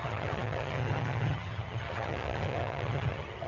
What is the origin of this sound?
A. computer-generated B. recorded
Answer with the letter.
A